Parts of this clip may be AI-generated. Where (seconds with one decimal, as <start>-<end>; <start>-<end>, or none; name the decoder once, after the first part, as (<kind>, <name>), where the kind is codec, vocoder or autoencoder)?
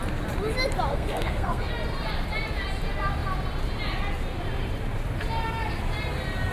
0.9-1.7 (codec, SNAC)